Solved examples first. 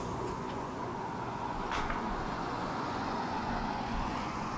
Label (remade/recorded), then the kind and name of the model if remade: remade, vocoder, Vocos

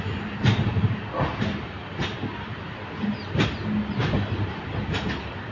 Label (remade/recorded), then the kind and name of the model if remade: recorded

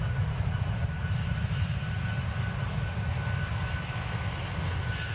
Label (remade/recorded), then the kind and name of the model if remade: recorded